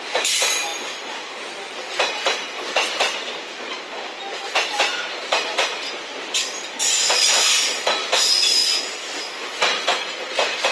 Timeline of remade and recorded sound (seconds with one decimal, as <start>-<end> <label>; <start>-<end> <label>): 0.0-10.7 recorded